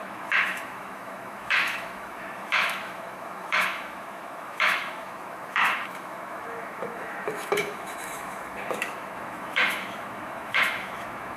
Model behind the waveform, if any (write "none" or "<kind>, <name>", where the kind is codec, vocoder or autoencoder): autoencoder, DAC-VAE